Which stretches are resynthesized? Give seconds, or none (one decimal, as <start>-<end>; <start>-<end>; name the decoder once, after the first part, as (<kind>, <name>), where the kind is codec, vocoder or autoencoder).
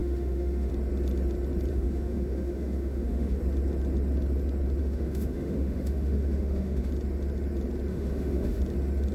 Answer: 0.0-0.7 (autoencoder, DAC-VAE); 1.7-3.4; 4.8-6.9; 7.9-8.6